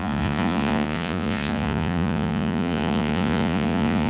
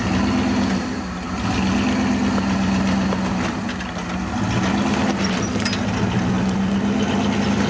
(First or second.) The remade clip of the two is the first